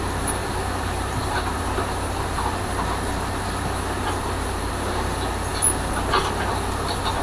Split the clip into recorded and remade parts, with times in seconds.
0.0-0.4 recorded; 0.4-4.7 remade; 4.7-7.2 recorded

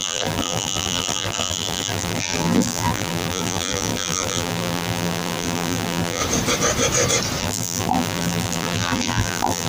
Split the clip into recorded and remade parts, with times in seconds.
0.0-6.2 remade; 6.2-7.4 recorded; 7.4-9.7 remade

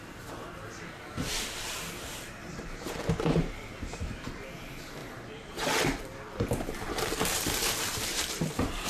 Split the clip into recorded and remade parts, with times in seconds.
0.0-8.9 remade

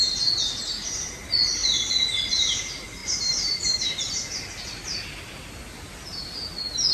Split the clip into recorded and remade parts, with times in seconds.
0.0-6.9 recorded

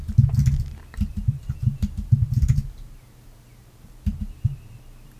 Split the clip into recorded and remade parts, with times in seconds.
0.0-1.1 recorded; 1.1-4.2 remade; 4.2-5.2 recorded

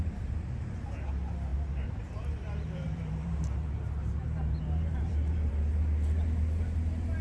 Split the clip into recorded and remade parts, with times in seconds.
0.0-1.5 recorded; 1.5-5.5 remade; 5.5-7.2 recorded

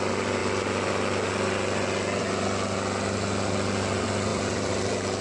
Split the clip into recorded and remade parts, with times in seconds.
0.0-4.3 recorded; 4.3-5.2 remade